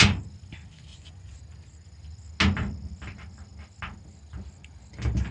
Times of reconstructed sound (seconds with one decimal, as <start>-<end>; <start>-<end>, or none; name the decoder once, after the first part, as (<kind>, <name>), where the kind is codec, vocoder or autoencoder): 0.9-1.4 (vocoder, Vocos)